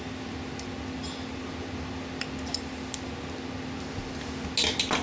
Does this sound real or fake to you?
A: real